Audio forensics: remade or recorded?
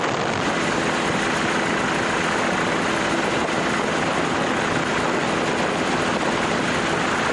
recorded